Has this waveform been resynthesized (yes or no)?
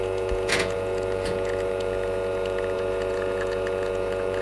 yes